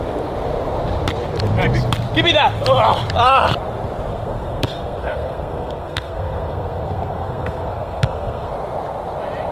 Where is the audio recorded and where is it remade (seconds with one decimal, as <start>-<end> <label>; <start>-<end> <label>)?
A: 0.0-4.1 recorded; 4.1-8.5 remade; 8.5-9.5 recorded